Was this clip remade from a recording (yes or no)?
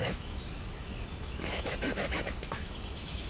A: yes